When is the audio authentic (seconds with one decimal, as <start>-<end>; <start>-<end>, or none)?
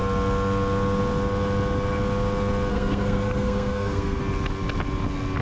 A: 0.0-2.7; 4.2-5.4